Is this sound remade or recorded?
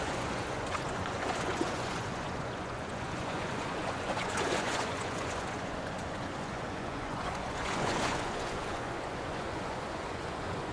remade